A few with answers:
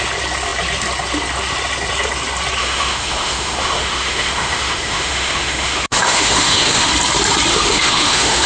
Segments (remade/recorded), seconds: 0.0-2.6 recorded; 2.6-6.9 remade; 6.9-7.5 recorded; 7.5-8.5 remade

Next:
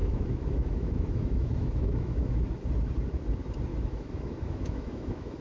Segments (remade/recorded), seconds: 0.0-2.5 remade; 2.5-3.7 recorded; 3.7-5.4 remade

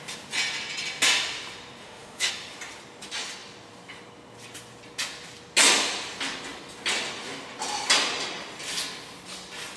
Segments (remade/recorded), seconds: 0.0-1.8 recorded; 1.8-2.3 remade; 2.3-9.8 recorded

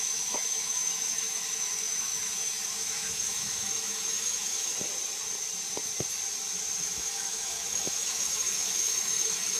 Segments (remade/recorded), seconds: 0.0-4.7 remade; 4.7-6.8 recorded; 6.8-9.6 remade

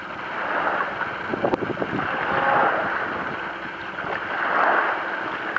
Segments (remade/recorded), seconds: 0.0-5.6 recorded

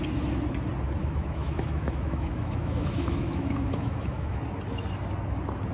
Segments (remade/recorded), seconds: 0.0-1.0 recorded; 1.0-4.4 remade; 4.4-5.7 recorded